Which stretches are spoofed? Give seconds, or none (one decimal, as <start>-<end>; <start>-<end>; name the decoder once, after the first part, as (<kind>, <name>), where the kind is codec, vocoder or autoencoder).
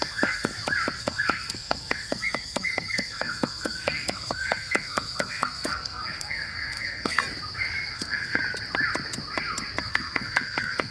0.0-0.5 (codec, SNAC); 1.0-7.2; 7.9-8.4; 9.8-10.9